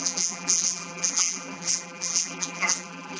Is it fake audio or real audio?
fake